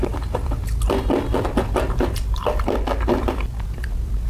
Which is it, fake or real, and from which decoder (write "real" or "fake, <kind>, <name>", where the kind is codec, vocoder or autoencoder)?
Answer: real